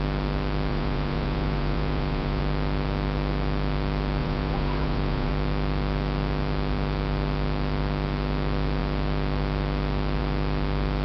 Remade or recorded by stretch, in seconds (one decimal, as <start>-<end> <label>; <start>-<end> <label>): 0.0-0.7 recorded; 0.7-2.4 remade; 2.4-4.2 recorded; 4.2-5.3 remade; 5.3-11.0 recorded